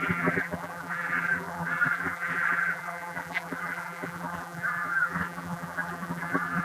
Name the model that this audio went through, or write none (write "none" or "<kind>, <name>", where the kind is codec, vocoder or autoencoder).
vocoder, BigVGAN v2